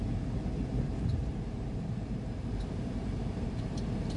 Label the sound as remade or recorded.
remade